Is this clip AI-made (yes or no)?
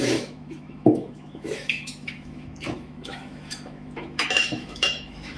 yes